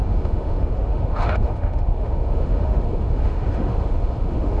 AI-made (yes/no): yes